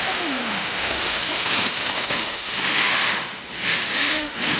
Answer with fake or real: fake